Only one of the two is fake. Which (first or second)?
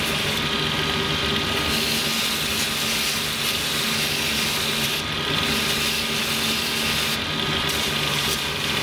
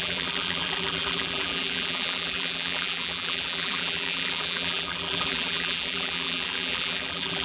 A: second